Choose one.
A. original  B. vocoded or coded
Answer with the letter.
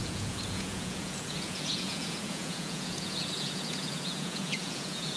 B